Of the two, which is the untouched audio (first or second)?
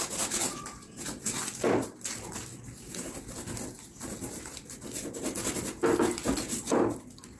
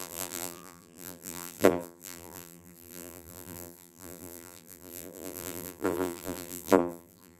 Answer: first